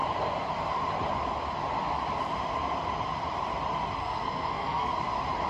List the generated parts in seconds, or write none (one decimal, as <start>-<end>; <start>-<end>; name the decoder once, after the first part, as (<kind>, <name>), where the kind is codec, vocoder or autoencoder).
4.0-4.9 (codec, SNAC)